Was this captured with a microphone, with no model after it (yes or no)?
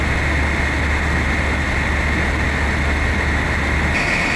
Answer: yes